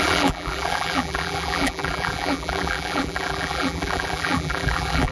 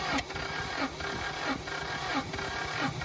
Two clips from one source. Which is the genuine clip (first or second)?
second